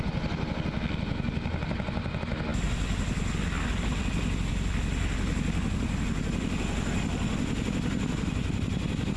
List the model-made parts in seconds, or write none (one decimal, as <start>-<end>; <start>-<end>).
none